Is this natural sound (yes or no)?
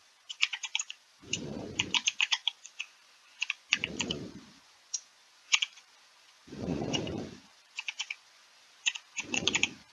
no